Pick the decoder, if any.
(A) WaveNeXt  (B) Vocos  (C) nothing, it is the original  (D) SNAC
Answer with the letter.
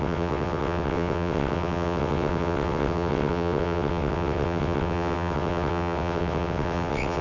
A